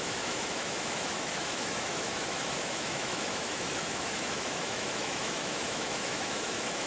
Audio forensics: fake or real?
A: fake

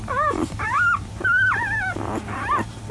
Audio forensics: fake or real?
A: real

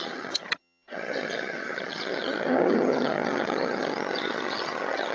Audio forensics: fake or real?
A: fake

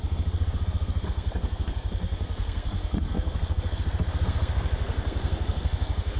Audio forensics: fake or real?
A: fake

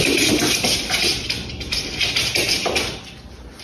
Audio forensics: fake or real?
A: real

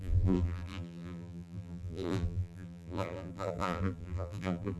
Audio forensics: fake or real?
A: fake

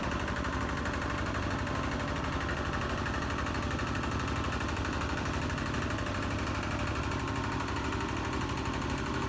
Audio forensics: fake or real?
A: real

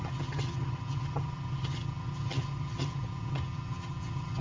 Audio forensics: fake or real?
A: fake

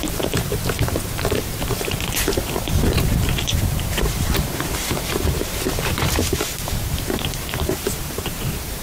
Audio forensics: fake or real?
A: fake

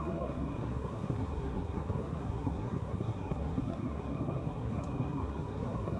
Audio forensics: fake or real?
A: fake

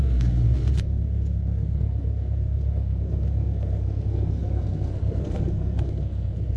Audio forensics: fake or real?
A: fake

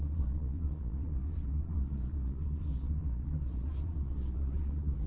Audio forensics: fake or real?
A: fake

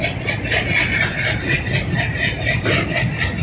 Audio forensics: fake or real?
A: real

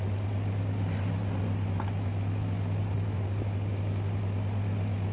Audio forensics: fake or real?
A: real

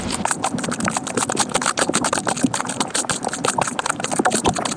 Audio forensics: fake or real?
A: real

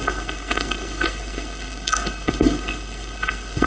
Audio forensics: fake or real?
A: fake